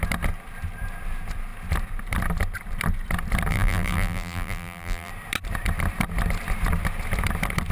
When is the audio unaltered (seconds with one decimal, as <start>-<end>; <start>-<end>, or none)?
0.0-3.5; 5.1-7.7